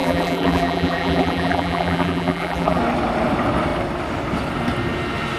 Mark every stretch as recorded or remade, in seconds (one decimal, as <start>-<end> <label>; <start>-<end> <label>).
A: 0.0-2.8 remade; 2.8-5.4 recorded